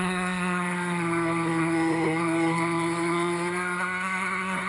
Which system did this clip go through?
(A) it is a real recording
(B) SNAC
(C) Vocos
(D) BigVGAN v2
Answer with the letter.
B